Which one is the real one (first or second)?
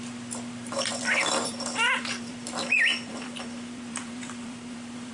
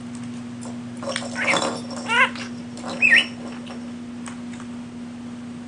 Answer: second